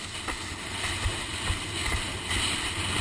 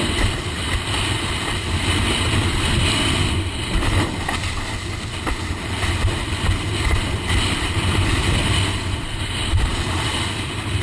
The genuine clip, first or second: first